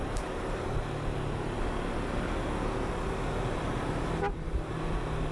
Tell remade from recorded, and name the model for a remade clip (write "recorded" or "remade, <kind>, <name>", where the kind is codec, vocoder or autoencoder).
recorded